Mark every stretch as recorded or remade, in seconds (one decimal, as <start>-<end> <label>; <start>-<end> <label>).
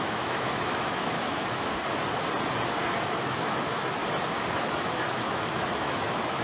0.0-1.7 remade; 1.7-3.0 recorded; 3.0-4.0 remade; 4.0-4.6 recorded; 4.6-6.4 remade